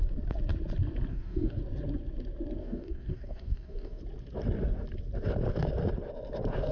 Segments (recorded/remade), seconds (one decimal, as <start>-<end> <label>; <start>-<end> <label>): 0.0-1.1 recorded; 1.1-1.6 remade; 1.6-2.6 recorded; 2.6-4.0 remade; 4.0-6.7 recorded